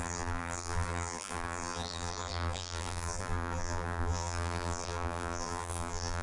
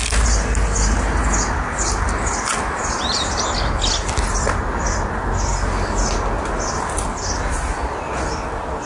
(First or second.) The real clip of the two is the second